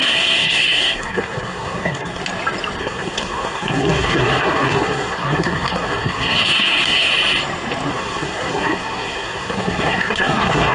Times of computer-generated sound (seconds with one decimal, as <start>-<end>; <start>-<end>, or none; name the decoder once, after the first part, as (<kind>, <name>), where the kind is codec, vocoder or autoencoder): 0.0-2.2 (codec, SNAC); 2.8-7.1; 7.9-10.7